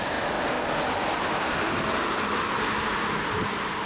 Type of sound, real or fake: real